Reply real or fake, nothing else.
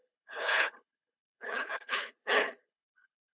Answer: fake